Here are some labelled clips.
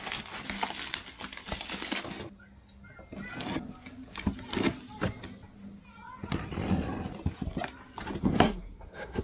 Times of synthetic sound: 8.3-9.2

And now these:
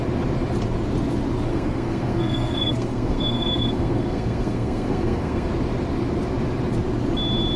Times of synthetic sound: 1.5-5.5